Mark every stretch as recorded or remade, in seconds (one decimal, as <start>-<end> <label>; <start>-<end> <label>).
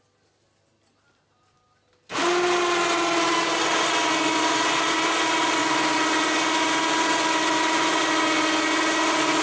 0.0-9.4 recorded